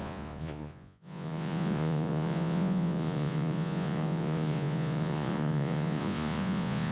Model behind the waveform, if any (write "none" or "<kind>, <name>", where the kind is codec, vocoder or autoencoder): vocoder, Vocos